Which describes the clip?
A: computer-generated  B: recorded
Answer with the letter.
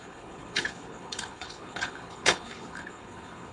A